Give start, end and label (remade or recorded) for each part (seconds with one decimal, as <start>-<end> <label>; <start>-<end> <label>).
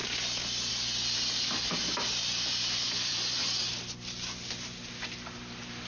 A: 0.0-2.2 recorded; 2.2-3.4 remade; 3.4-5.9 recorded